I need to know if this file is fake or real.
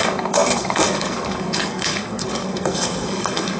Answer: fake